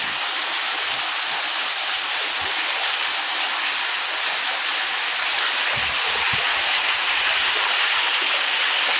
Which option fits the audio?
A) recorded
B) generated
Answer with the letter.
A